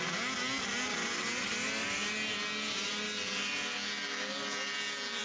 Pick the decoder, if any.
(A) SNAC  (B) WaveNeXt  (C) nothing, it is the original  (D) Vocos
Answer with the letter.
C